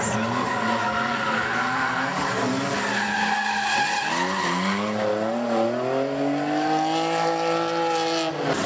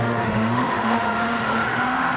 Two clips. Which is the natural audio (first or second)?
first